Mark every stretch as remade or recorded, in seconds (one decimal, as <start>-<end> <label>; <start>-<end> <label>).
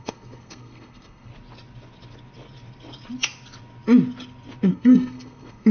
0.0-1.3 remade; 1.3-4.7 recorded; 4.7-5.7 remade